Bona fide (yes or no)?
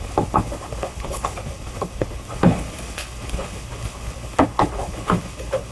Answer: no